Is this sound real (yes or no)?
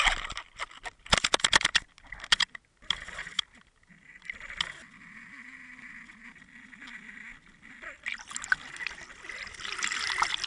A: yes